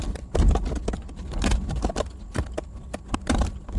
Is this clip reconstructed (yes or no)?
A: no